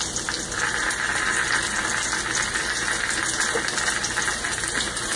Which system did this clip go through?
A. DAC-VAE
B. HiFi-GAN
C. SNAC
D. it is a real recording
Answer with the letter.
D